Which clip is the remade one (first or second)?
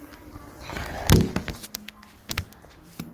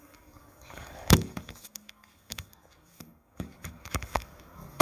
second